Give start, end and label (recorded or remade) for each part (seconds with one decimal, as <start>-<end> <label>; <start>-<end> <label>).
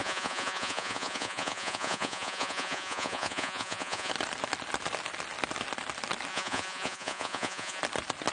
0.0-4.1 remade; 4.1-6.3 recorded; 6.3-7.8 remade; 7.8-8.3 recorded